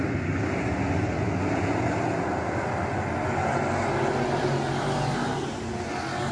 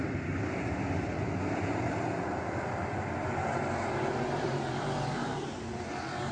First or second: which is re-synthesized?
second